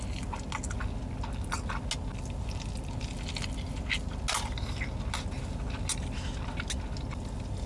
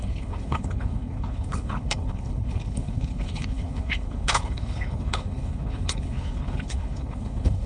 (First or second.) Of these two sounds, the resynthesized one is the second